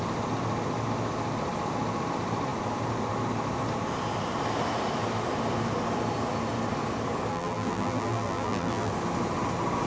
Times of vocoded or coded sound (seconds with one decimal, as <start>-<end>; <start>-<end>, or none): 7.3-8.9

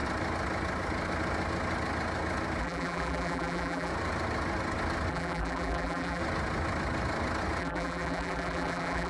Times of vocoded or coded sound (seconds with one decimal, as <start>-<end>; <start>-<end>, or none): 2.6-3.9; 5.1-6.2; 7.6-9.1

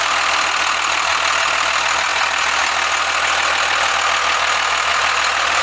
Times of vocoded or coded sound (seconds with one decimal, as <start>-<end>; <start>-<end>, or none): none

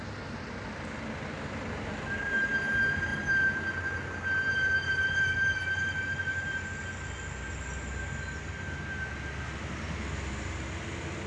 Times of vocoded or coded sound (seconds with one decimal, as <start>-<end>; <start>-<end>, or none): none

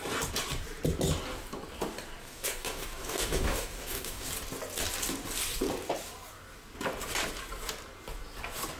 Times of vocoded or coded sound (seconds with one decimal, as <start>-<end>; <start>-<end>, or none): 2.2-4.3

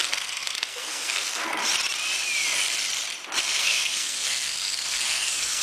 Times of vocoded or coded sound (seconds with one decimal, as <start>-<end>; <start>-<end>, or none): 0.0-1.6; 3.4-5.6